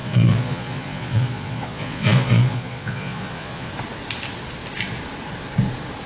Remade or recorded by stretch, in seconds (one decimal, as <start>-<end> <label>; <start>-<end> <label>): 0.0-3.7 remade; 3.7-6.1 recorded